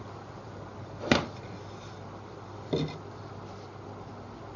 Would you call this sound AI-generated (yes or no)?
no